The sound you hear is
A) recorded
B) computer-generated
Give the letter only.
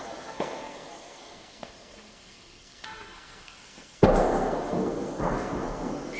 B